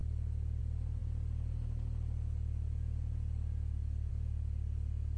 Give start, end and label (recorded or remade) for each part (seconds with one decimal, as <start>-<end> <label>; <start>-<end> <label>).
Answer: 0.0-5.2 recorded